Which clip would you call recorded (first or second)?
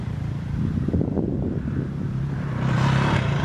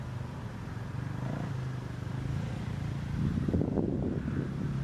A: second